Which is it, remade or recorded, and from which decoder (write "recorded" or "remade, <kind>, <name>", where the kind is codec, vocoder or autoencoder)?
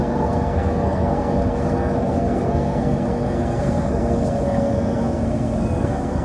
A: remade, codec, SNAC